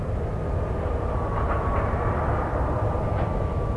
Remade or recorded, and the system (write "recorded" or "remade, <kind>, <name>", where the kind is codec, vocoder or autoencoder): recorded